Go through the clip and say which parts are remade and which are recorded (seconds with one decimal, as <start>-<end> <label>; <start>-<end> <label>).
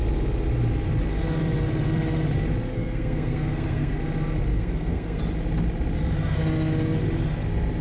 0.0-2.7 recorded; 2.7-4.0 remade; 4.0-4.5 recorded; 4.5-5.2 remade; 5.2-7.8 recorded